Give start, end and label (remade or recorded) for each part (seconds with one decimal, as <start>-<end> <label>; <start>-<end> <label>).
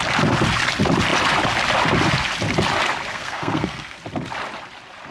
0.0-3.1 recorded; 3.1-4.0 remade; 4.0-5.1 recorded